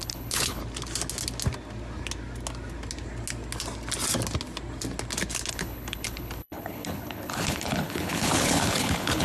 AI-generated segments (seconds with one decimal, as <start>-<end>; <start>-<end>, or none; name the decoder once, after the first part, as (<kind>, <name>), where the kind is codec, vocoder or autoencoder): 0.0-0.6 (codec, HILCodec); 5.5-9.2